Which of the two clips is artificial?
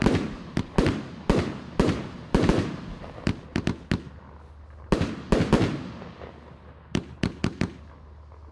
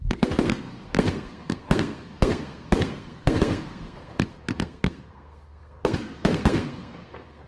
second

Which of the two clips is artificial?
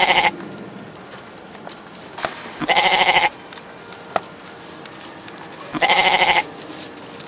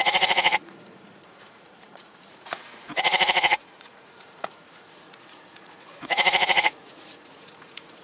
second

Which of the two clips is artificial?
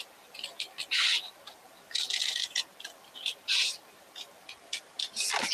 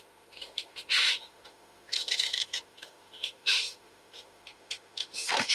second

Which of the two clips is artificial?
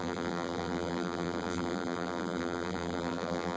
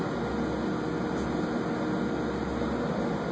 first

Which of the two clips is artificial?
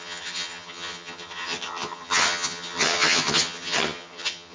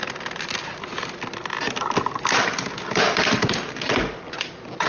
first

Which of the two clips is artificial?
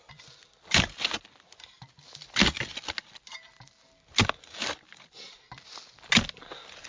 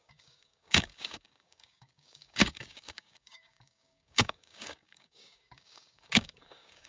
second